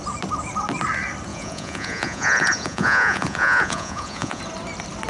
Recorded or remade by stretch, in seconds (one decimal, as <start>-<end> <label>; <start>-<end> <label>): 0.0-1.3 recorded; 1.3-4.4 remade; 4.4-5.1 recorded